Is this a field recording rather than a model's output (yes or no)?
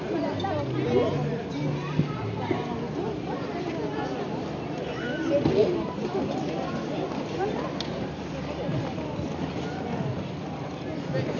yes